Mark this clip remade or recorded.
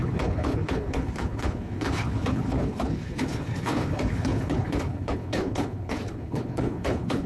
remade